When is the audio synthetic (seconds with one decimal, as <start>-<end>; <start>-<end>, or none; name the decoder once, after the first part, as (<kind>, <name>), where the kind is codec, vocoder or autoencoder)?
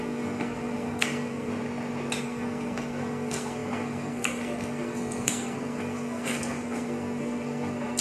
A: 0.0-1.5 (codec, SNAC); 2.2-8.0